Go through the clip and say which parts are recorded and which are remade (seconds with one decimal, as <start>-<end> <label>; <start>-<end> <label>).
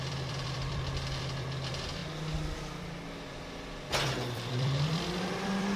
0.0-2.0 remade; 2.0-3.9 recorded; 3.9-5.8 remade